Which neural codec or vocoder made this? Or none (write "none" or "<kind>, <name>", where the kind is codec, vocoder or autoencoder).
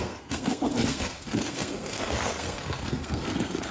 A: codec, SNAC